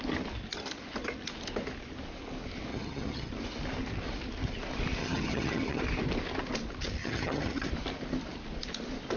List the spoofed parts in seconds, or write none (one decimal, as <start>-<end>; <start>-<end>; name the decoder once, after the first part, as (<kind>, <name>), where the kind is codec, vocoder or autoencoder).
2.7-3.3 (vocoder, HiFi-GAN); 5.0-5.8; 7.0-7.7